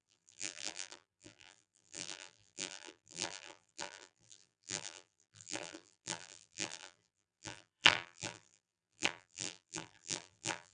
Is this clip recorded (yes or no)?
no